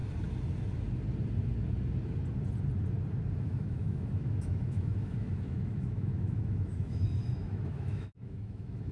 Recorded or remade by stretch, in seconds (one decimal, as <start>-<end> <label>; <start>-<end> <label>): 0.0-3.4 recorded; 3.4-8.9 remade